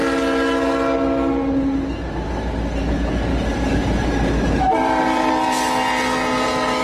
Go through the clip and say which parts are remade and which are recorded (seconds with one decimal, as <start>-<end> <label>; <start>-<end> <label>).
0.0-3.3 recorded; 3.3-5.3 remade; 5.3-6.8 recorded

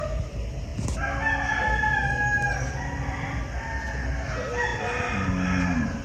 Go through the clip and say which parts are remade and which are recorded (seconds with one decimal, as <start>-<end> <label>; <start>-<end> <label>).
0.0-6.0 recorded

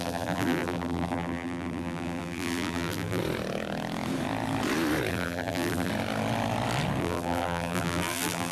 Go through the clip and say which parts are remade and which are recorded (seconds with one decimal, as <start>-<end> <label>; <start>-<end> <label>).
0.0-3.2 remade; 3.2-5.1 recorded; 5.1-5.9 remade; 5.9-7.0 recorded; 7.0-8.5 remade

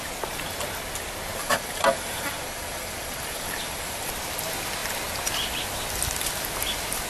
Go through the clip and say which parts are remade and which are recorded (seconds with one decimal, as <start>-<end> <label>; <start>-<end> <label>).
0.0-1.4 recorded; 1.4-4.1 remade; 4.1-7.1 recorded

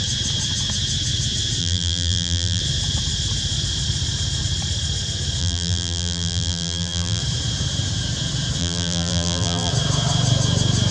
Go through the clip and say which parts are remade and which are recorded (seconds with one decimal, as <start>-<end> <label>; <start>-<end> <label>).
0.0-1.6 recorded; 1.6-2.6 remade; 2.6-5.4 recorded; 5.4-7.2 remade; 7.2-8.6 recorded; 8.6-9.7 remade; 9.7-10.9 recorded

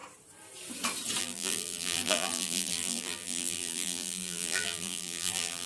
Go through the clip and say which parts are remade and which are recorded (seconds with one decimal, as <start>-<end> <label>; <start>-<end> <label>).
0.0-1.2 recorded; 1.2-5.7 remade

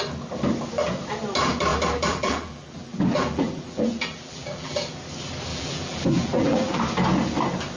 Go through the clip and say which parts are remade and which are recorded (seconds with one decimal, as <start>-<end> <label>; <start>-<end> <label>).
0.0-1.7 recorded; 1.7-4.8 remade; 4.8-5.5 recorded; 5.5-6.8 remade; 6.8-7.8 recorded